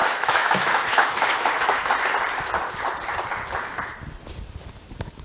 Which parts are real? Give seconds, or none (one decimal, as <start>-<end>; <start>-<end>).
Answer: 1.8-5.2